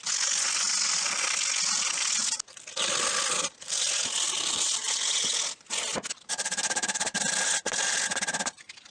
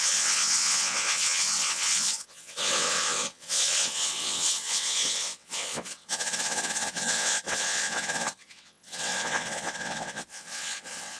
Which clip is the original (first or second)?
first